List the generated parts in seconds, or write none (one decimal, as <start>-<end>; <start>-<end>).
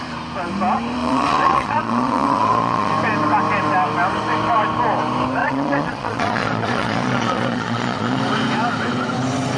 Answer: 1.0-2.9; 5.4-8.2